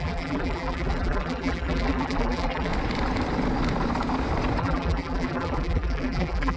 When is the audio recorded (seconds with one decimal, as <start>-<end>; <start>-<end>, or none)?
2.7-4.6